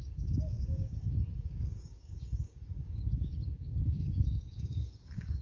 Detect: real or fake fake